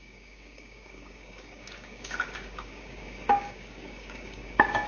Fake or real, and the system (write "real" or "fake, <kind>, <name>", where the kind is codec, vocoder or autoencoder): fake, codec, DAC